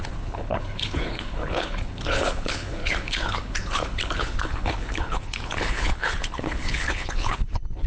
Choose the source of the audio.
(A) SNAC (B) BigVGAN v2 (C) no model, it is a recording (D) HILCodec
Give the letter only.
D